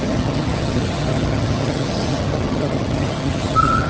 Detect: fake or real fake